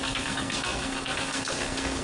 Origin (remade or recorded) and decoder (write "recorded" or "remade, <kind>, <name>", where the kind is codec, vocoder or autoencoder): remade, codec, SNAC